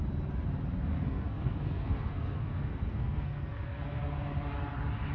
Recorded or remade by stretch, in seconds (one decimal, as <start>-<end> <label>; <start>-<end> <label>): 0.0-0.9 recorded; 0.9-4.0 remade; 4.0-5.1 recorded